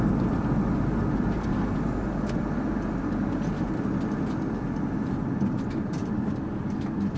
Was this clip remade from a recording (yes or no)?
no